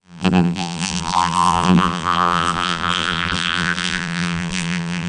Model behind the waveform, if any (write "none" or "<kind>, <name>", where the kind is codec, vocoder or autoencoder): vocoder, BigVGAN v2